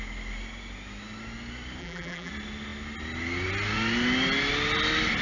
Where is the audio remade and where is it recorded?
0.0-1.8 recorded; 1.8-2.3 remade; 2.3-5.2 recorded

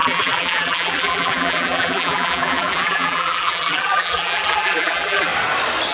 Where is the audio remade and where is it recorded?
0.0-5.3 remade; 5.3-5.9 recorded

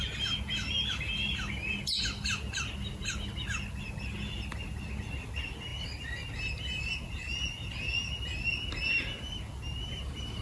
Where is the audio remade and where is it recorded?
0.0-10.4 recorded